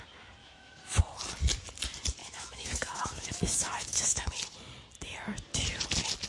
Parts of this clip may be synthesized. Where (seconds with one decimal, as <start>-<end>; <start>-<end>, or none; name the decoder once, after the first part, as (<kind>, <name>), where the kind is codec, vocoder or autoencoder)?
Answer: 0.4-1.0 (autoencoder, DAC-VAE); 2.2-4.3